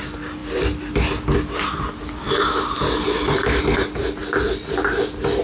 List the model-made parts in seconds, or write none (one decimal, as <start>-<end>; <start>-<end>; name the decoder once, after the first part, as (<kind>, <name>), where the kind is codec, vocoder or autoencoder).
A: none